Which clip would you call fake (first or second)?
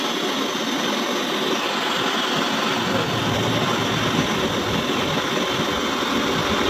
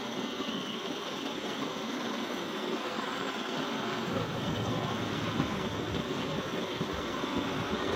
second